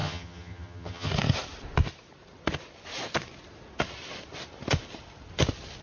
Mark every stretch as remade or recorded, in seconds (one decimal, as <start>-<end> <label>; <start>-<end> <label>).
0.0-1.1 remade; 1.1-5.8 recorded